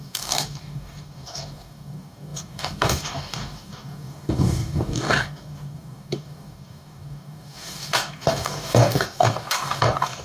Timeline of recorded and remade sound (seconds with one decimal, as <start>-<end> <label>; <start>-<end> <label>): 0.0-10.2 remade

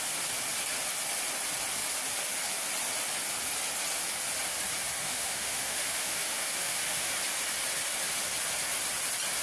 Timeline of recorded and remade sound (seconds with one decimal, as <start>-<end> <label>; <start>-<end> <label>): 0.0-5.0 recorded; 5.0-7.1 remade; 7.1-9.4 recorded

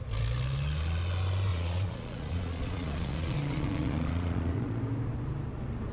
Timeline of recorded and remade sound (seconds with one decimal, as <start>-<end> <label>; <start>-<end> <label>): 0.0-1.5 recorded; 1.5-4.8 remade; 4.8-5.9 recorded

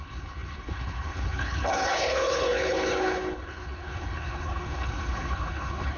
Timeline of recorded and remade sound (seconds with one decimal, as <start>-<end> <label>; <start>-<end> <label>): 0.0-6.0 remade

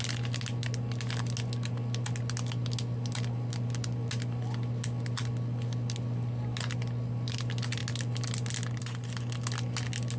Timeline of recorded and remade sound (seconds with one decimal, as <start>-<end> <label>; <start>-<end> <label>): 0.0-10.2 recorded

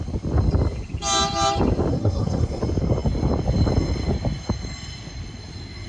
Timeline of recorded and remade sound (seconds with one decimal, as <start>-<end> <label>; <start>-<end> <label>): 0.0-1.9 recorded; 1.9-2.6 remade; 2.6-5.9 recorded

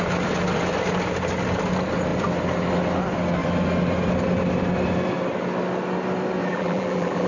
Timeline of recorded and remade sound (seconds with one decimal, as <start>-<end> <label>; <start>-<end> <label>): 0.0-6.4 recorded; 6.4-7.3 remade